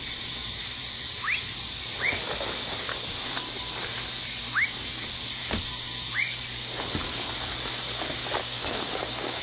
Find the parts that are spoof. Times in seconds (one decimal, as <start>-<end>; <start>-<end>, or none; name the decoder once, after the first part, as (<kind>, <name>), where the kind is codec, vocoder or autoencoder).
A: 8.4-9.4 (codec, DAC)